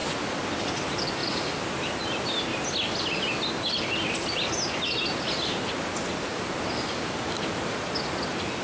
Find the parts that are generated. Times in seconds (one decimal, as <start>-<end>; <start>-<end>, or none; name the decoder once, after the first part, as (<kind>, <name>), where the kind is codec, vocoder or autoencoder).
none